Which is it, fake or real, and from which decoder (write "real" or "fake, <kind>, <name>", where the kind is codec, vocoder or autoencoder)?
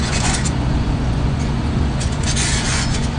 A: fake, vocoder, Vocos